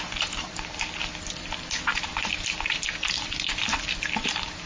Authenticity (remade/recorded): recorded